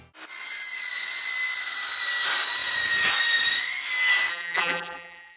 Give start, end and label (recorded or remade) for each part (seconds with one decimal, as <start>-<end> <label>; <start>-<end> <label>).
0.0-4.3 recorded; 4.3-5.4 remade